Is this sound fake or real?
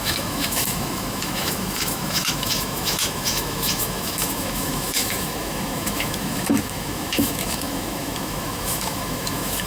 fake